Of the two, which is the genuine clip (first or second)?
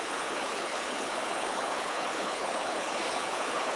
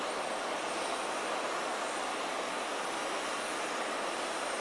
second